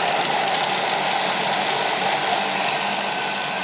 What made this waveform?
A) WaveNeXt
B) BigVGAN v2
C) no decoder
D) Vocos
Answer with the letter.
C